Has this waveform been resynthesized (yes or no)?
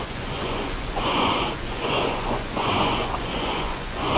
yes